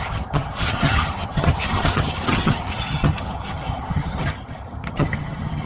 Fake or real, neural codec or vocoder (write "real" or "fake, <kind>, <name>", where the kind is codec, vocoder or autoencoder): fake, vocoder, HiFi-GAN